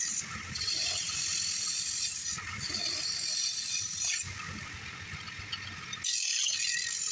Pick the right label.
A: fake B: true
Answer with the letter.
B